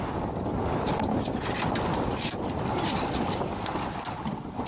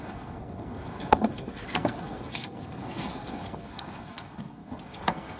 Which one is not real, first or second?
second